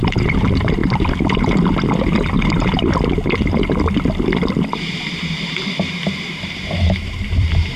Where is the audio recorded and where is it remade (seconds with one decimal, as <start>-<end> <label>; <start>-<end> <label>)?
0.0-0.8 remade; 0.8-5.4 recorded; 5.4-7.8 remade